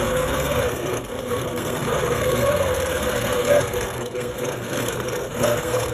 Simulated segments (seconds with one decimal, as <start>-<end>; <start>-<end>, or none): 0.0-5.9